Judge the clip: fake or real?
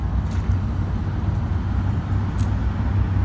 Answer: real